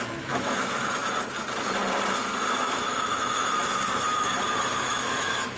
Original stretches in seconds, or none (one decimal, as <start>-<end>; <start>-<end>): 1.0-2.5